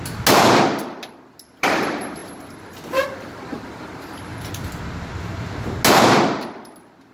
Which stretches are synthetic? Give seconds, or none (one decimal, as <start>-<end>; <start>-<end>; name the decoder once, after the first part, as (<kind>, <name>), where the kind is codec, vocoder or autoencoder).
none